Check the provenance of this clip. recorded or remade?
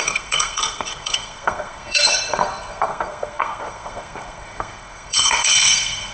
remade